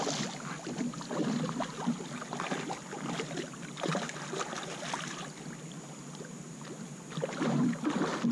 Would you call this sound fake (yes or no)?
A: no